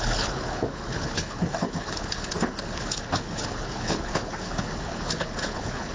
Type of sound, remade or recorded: remade